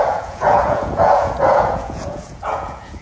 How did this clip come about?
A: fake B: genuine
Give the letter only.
A